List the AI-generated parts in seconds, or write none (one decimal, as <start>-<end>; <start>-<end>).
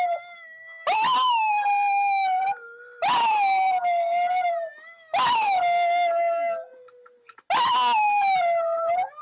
none